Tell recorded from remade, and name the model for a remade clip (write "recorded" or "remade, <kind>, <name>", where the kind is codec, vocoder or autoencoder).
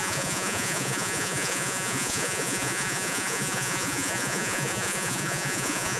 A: remade, vocoder, Vocos